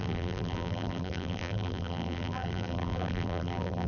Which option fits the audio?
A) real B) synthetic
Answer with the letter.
B